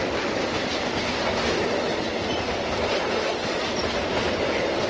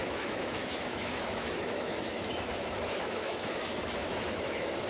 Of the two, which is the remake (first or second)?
second